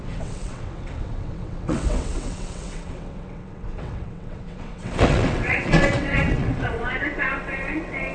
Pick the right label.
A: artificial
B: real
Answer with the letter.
A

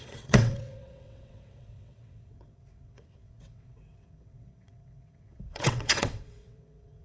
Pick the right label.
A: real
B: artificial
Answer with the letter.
B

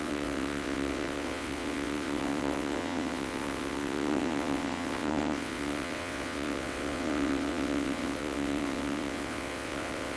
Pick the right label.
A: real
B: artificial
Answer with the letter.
B